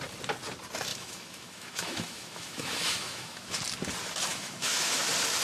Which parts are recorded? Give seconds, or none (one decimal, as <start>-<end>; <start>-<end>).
0.0-0.9; 3.6-4.3; 5.0-5.4